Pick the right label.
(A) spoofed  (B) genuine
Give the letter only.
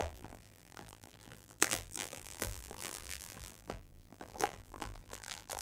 A